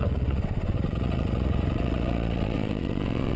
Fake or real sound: fake